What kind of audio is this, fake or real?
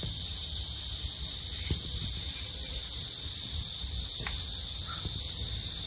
real